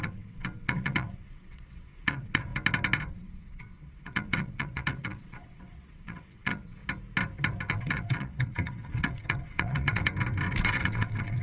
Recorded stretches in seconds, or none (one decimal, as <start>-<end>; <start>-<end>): 2.5-3.1; 6.8-7.7; 10.1-10.6